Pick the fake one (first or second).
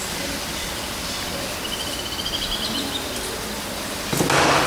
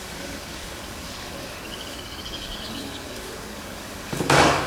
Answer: second